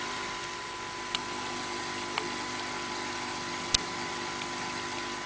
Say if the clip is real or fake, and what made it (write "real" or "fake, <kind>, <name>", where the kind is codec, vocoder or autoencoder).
real